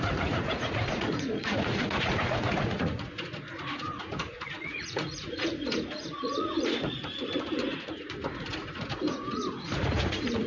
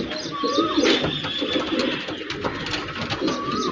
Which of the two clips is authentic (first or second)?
second